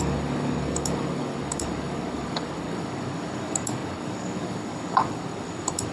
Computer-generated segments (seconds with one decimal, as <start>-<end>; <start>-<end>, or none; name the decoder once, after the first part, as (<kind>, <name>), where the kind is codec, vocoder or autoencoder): 0.0-5.9 (codec, DAC)